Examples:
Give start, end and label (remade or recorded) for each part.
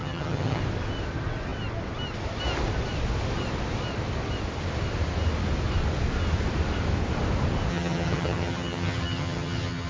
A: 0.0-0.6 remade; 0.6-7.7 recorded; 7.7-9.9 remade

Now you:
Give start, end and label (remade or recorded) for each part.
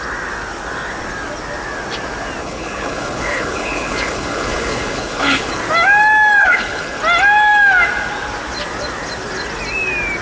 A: 0.0-2.4 recorded; 2.4-5.6 remade; 5.6-6.4 recorded; 6.4-7.0 remade; 7.0-10.2 recorded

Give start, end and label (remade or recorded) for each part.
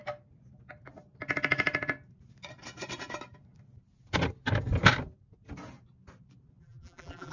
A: 0.0-6.6 recorded; 6.6-7.3 remade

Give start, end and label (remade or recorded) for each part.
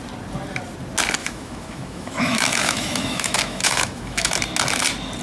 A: 0.0-1.2 recorded; 1.2-4.3 remade; 4.3-5.2 recorded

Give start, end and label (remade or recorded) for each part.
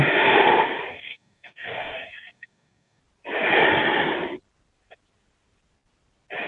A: 0.0-0.9 recorded; 0.9-3.0 remade; 3.0-6.5 recorded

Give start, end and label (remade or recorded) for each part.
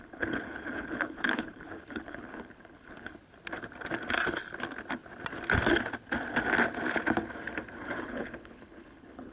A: 0.0-3.2 remade; 3.2-7.8 recorded; 7.8-9.3 remade